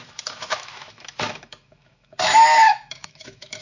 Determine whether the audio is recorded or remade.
remade